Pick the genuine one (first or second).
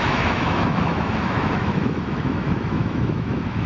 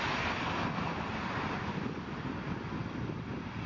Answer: second